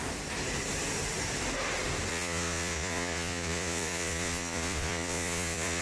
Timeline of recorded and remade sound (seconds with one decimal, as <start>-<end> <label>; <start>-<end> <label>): 0.0-2.1 recorded; 2.1-5.8 remade